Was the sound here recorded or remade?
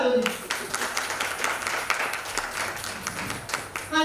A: recorded